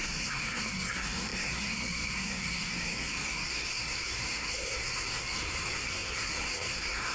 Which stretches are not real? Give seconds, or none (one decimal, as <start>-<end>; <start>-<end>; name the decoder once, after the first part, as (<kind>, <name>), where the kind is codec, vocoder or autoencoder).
0.0-7.1 (codec, SNAC)